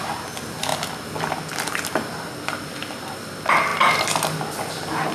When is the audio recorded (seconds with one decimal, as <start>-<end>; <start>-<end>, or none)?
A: 0.0-3.7